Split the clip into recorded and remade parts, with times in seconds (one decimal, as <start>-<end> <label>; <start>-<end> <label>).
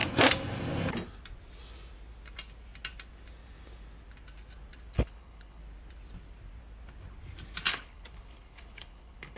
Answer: 0.0-4.9 recorded; 4.9-5.6 remade; 5.6-7.7 recorded; 7.7-9.4 remade